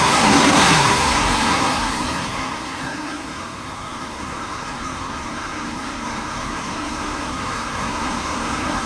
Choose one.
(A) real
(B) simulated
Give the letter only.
B